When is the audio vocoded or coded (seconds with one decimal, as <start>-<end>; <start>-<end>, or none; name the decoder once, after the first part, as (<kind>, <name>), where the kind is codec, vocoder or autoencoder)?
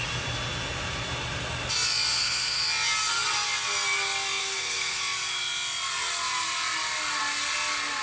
2.1-2.6 (codec, SNAC); 4.4-5.0